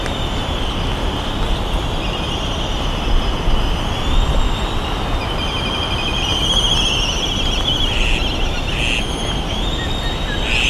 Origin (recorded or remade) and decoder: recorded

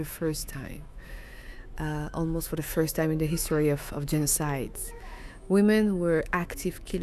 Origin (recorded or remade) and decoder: remade, autoencoder, DAC-VAE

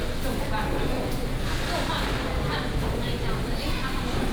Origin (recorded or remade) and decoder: recorded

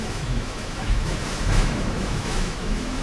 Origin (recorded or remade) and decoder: remade, autoencoder, DAC-VAE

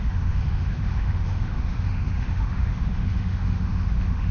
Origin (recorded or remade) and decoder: remade, autoencoder, DAC-VAE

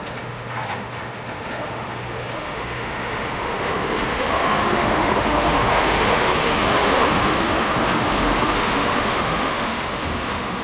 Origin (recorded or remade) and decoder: remade, autoencoder, DAC-VAE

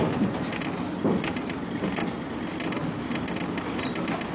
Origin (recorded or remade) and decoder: recorded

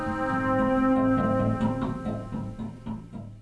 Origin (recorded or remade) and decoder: recorded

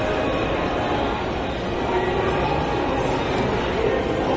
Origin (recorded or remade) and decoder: recorded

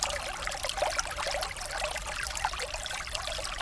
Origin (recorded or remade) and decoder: recorded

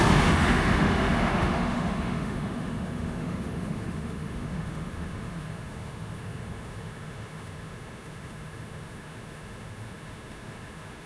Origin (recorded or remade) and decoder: remade, autoencoder, DAC-VAE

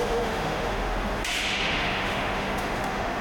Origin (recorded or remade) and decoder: remade, autoencoder, DAC-VAE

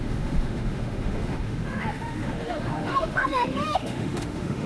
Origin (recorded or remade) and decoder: remade, autoencoder, DAC-VAE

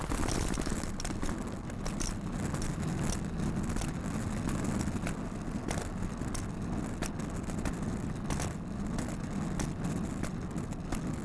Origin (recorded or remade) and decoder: recorded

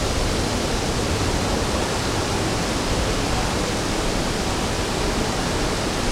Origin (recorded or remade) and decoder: recorded